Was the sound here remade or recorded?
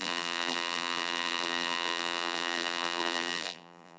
remade